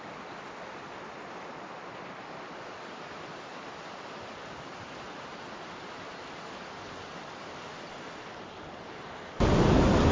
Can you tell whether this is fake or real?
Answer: real